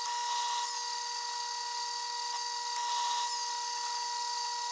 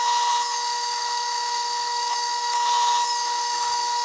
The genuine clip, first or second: first